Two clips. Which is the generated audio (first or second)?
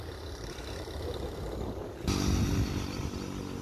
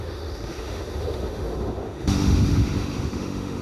second